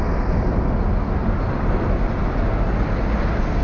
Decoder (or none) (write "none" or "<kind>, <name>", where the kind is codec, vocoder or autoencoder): none